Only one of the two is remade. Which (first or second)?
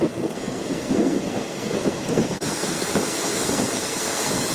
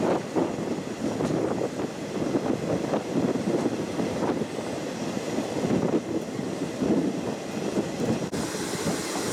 first